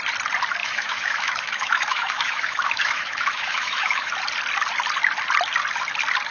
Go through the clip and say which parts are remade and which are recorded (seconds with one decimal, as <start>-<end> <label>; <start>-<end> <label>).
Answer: 0.0-0.6 recorded; 0.6-4.1 remade; 4.1-6.3 recorded